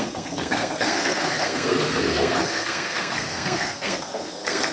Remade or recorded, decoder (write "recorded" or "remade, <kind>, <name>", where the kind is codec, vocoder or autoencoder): remade, codec, SNAC